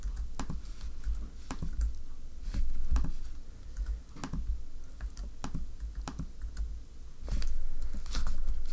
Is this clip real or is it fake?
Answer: real